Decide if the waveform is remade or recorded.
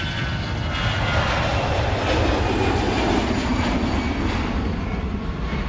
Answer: recorded